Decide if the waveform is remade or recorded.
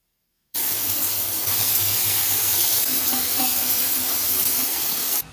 remade